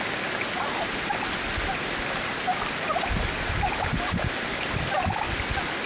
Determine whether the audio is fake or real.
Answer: real